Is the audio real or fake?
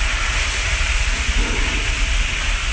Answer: real